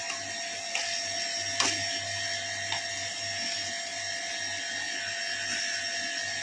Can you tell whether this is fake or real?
real